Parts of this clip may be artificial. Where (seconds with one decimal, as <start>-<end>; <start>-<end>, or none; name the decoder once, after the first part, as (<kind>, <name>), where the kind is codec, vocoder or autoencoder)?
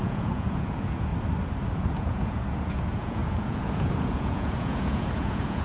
0.0-1.1 (vocoder, Vocos); 1.7-5.6